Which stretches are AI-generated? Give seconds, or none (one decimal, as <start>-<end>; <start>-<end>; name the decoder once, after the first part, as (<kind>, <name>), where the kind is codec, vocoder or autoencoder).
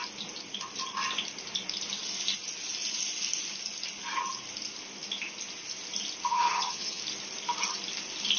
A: 6.3-7.0 (vocoder, HiFi-GAN)